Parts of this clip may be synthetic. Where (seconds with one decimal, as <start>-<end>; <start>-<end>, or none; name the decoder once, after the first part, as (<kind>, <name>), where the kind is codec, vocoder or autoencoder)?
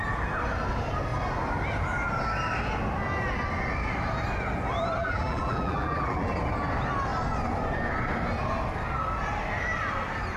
5.0-6.3 (vocoder, BigVGAN v2)